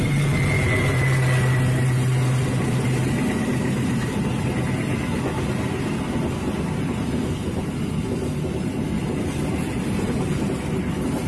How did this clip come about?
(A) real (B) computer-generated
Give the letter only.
A